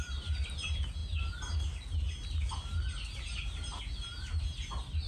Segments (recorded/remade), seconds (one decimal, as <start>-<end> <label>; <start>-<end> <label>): 0.0-5.1 recorded